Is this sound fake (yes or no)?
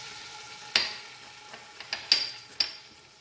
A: no